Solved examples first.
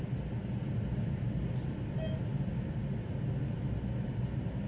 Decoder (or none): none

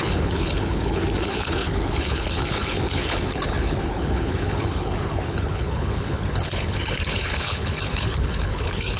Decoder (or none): codec, HILCodec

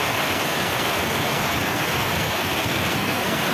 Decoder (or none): codec, SNAC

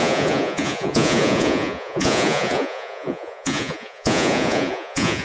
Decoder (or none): vocoder, Vocos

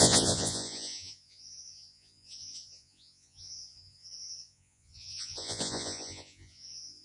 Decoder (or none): vocoder, Vocos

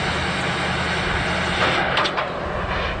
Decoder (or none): none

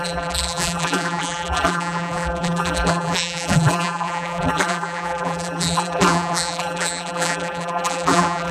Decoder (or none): vocoder, BigVGAN v2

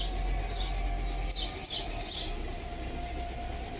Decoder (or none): none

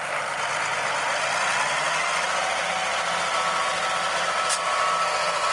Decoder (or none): none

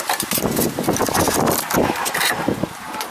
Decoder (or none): none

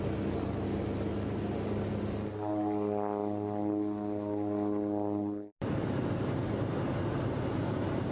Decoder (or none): none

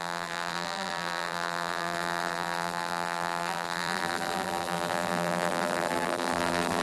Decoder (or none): vocoder, BigVGAN v2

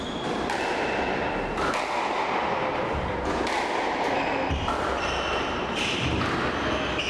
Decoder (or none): none